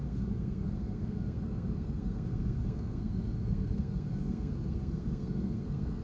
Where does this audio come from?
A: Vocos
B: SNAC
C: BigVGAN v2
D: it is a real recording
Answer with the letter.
B